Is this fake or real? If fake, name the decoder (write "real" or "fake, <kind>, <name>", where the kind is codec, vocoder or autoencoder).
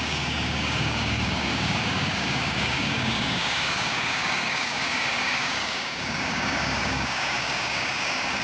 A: fake, codec, DAC